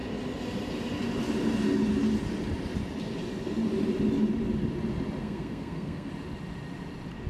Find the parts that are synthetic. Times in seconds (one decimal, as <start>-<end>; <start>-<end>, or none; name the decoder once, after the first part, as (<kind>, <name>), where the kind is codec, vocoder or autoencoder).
5.2-6.1 (codec, SNAC)